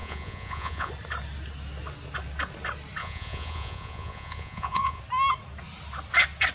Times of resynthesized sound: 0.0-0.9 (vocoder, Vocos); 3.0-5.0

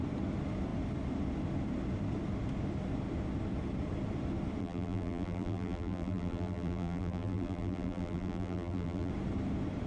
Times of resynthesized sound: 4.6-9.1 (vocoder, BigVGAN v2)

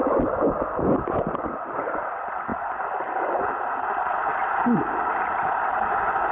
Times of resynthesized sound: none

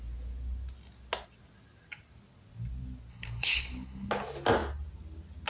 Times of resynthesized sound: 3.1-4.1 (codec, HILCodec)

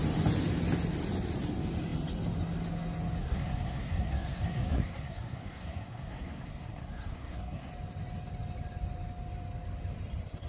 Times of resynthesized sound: 3.2-7.7 (codec, SNAC)

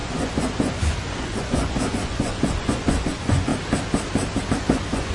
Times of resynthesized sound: 0.0-3.5 (vocoder, Vocos); 4.6-5.1

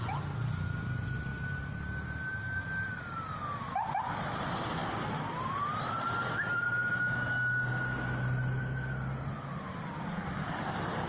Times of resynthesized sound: none

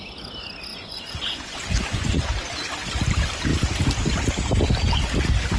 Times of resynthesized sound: 0.7-2.3 (vocoder, Vocos)